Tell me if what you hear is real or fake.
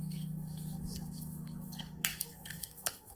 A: fake